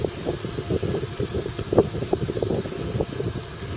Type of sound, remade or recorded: recorded